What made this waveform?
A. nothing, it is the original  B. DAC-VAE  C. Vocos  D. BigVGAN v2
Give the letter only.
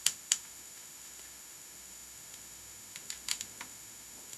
B